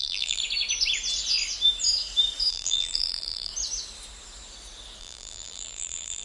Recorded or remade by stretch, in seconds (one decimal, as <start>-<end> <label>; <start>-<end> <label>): 0.0-0.4 remade; 0.4-2.5 recorded; 2.5-3.5 remade; 3.5-5.0 recorded; 5.0-6.2 remade